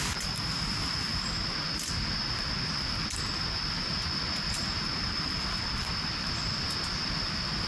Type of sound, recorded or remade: recorded